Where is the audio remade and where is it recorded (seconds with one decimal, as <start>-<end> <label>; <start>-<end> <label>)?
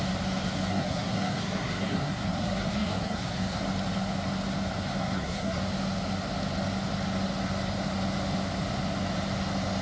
0.0-0.7 recorded; 0.7-3.6 remade; 3.6-5.0 recorded; 5.0-5.6 remade; 5.6-9.8 recorded